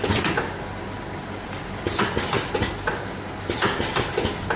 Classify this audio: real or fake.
real